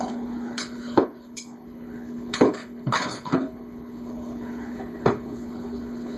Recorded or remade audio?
remade